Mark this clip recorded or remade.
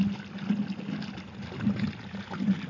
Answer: recorded